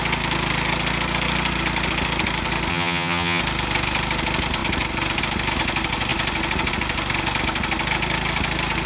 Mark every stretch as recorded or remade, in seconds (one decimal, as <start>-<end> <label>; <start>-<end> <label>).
0.0-2.7 recorded; 2.7-3.4 remade; 3.4-8.9 recorded